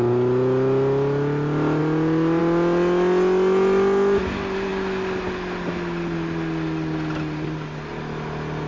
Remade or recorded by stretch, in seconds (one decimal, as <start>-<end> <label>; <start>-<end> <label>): 0.0-8.7 recorded